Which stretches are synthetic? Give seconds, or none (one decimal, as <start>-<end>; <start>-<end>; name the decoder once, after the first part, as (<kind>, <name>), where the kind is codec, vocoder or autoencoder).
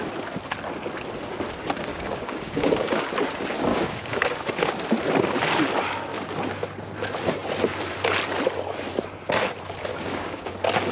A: 1.9-3.1 (codec, DAC); 3.7-4.7; 9.9-10.5